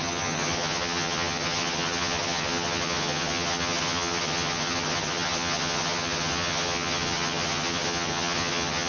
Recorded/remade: remade